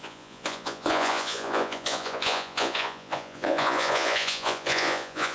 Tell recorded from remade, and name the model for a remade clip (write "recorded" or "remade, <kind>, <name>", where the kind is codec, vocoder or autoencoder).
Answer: remade, vocoder, Vocos